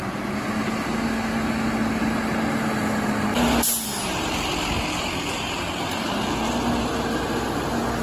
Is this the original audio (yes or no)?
yes